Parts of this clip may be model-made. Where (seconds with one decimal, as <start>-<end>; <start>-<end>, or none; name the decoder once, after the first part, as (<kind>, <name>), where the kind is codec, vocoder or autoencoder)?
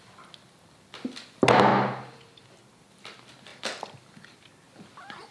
3.5-5.3 (vocoder, BigVGAN v2)